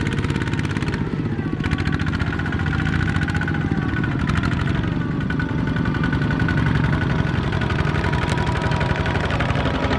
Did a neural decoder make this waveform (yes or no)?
no